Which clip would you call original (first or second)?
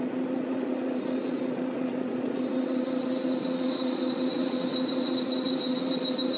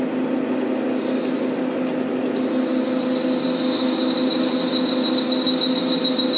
second